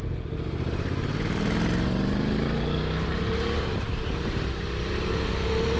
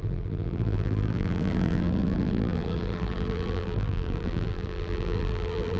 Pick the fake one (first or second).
second